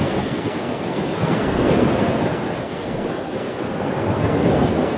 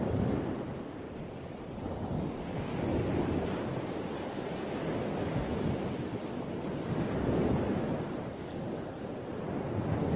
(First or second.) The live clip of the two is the second